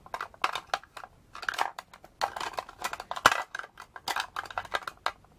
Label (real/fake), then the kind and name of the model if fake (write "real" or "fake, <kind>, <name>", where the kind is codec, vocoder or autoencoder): real